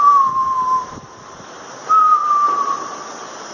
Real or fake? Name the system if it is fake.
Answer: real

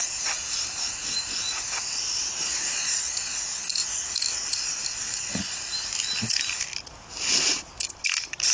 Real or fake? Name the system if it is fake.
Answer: real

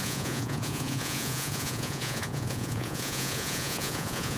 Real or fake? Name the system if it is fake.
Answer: fake, vocoder, Vocos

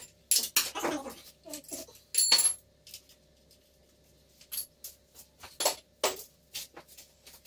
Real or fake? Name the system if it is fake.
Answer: real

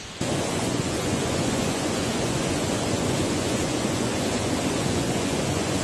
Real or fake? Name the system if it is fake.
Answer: fake, vocoder, Vocos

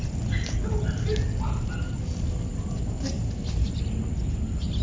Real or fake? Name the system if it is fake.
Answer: real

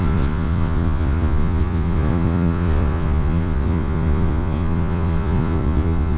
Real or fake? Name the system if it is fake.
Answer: fake, vocoder, Vocos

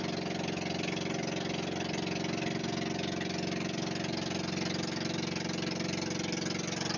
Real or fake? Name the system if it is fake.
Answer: real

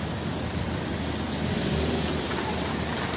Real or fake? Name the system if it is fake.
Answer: real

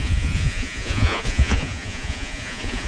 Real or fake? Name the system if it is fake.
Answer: fake, vocoder, Vocos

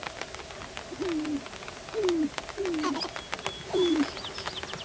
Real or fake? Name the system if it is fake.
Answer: real